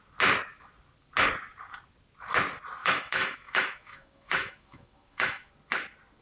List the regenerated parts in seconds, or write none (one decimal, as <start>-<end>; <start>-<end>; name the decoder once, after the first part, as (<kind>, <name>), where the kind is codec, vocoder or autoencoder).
2.8-5.5 (autoencoder, DAC-VAE)